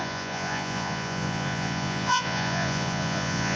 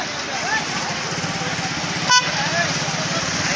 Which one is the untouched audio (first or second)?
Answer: second